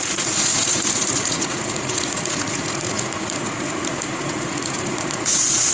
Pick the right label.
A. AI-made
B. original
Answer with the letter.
A